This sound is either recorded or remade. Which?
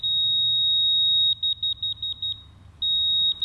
recorded